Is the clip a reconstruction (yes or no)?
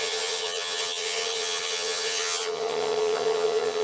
yes